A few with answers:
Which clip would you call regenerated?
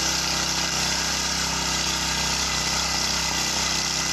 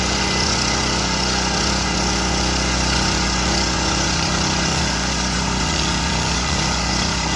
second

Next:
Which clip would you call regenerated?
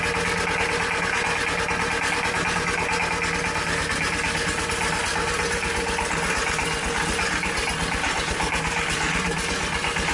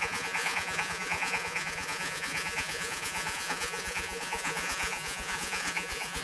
second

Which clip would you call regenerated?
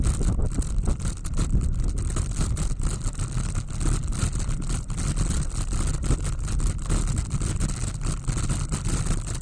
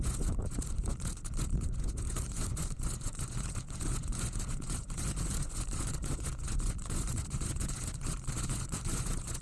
second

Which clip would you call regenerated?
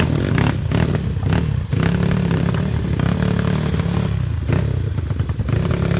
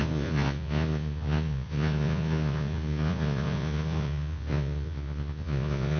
second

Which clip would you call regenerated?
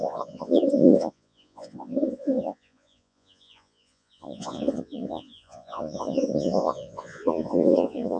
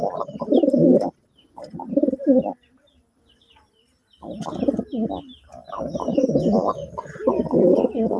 first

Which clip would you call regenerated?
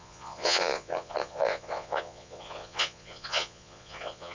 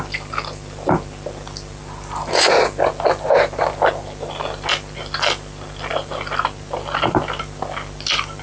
first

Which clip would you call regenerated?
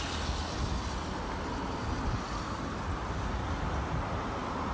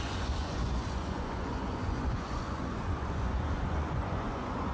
second